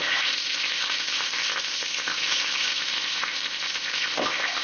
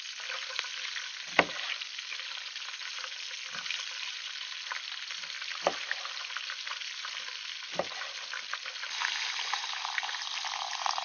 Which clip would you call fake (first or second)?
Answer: first